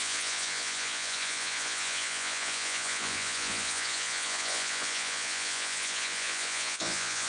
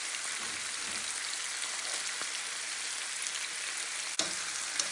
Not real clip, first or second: first